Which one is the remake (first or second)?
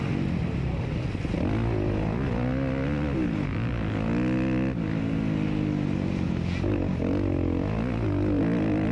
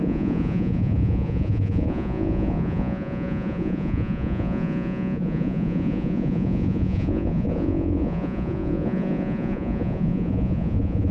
second